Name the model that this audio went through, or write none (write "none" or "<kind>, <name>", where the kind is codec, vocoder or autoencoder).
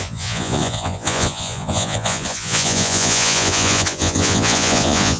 vocoder, Vocos